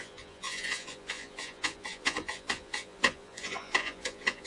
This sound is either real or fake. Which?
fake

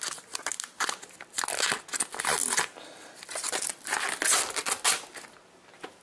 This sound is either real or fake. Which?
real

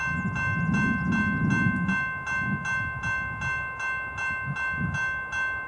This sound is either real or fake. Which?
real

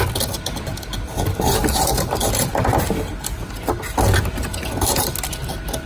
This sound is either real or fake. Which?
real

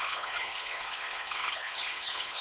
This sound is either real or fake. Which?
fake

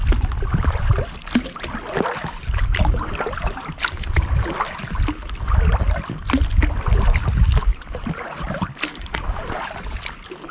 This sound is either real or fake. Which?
real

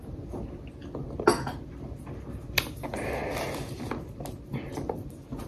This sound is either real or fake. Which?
real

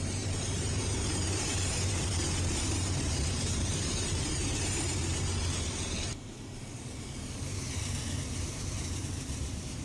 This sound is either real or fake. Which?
fake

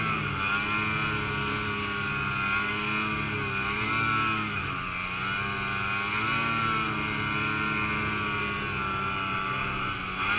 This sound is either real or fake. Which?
real